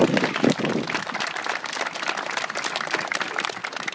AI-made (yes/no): no